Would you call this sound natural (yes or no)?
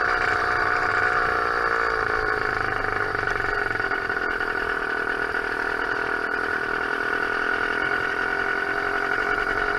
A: yes